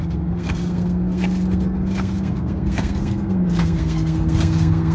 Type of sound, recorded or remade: remade